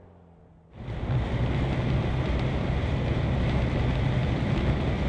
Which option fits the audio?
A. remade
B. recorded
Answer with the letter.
B